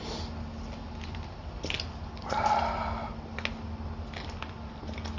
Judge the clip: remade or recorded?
recorded